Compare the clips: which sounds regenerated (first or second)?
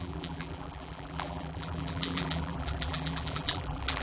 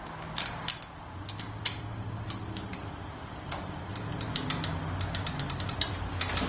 first